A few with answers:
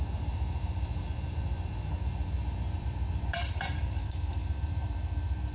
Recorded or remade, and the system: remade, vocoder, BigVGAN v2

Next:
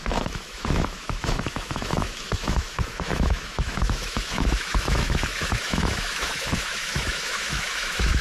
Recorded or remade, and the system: remade, autoencoder, DAC-VAE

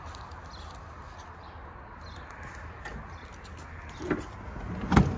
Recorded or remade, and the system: recorded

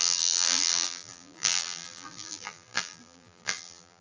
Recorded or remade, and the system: remade, vocoder, BigVGAN v2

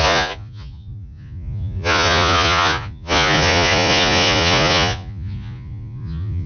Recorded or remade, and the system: remade, vocoder, Vocos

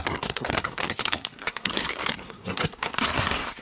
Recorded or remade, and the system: remade, codec, SNAC